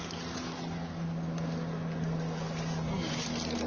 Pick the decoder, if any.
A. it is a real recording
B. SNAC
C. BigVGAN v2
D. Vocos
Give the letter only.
A